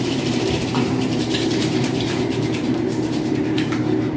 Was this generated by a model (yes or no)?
yes